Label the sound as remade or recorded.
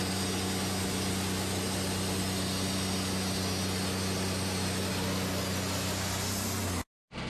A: recorded